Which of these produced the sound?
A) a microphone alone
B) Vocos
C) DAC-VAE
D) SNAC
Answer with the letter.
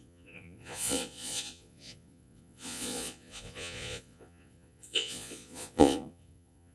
B